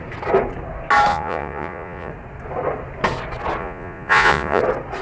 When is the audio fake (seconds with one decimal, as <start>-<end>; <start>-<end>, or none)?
1.1-2.1; 3.6-4.6